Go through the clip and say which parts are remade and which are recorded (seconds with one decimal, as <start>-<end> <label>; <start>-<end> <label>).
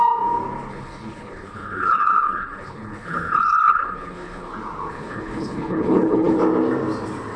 0.0-0.7 recorded; 0.7-4.5 remade; 4.5-4.9 recorded; 4.9-6.4 remade; 6.4-7.4 recorded